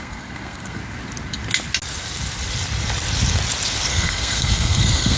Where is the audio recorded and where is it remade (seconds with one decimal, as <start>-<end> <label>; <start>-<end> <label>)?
0.0-0.8 remade; 0.8-3.9 recorded; 3.9-5.2 remade